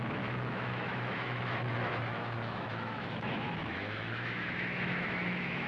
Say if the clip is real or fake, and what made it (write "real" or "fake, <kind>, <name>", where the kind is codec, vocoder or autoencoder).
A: fake, autoencoder, DAC-VAE